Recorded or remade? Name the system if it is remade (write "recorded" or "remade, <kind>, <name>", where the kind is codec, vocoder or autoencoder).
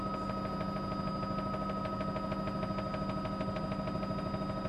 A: recorded